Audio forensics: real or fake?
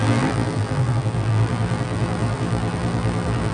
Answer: fake